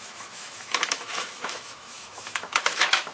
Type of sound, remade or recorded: remade